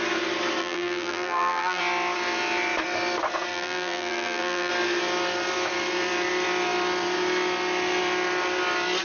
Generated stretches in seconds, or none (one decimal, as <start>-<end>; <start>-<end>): 0.6-1.8; 3.5-4.7